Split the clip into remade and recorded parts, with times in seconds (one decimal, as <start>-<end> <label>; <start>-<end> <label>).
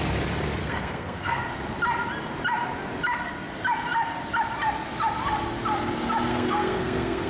0.0-0.6 recorded; 0.6-1.4 remade; 1.4-6.3 recorded; 6.3-7.3 remade